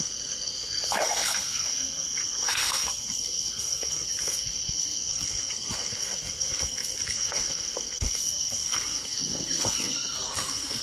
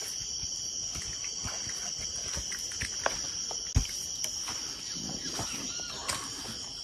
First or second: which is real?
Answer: second